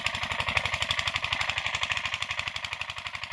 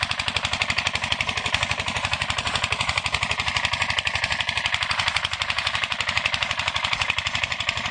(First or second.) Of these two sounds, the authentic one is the first